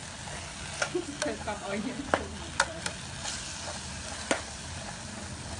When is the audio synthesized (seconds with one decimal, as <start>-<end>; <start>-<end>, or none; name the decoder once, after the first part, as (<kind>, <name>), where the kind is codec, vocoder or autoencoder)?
none